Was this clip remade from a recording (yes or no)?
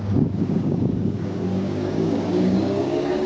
yes